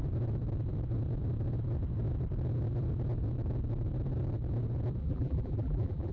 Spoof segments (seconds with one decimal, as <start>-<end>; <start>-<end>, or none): 5.0-6.1